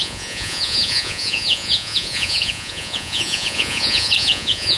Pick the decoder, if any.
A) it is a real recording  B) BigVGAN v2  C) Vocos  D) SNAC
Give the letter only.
C